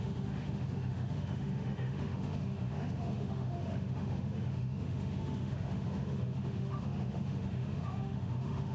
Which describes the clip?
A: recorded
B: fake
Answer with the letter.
B